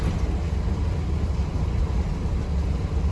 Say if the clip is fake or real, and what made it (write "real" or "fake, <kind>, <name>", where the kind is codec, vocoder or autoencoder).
fake, vocoder, BigVGAN v2